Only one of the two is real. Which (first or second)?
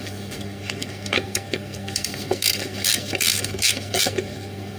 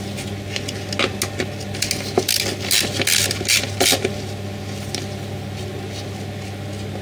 second